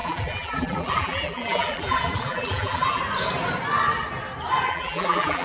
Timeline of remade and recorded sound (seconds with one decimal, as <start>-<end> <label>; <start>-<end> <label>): 0.0-3.0 remade; 3.0-4.7 recorded; 4.7-5.4 remade